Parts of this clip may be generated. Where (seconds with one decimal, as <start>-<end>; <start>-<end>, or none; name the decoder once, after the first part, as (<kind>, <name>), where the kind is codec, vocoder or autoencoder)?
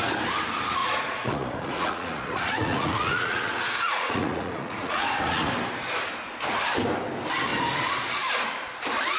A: 0.8-5.5 (vocoder, Vocos)